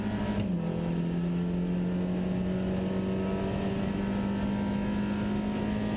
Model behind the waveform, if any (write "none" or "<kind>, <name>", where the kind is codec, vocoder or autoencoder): none